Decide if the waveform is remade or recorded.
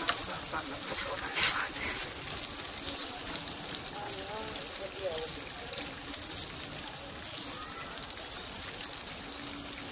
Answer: recorded